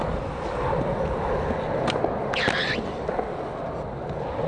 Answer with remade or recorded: recorded